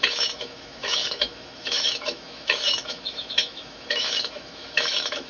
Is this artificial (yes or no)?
yes